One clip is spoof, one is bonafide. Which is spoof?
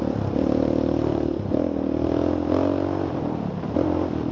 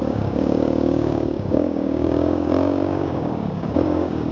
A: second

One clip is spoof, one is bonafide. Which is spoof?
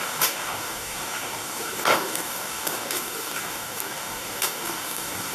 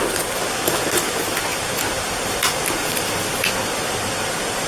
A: first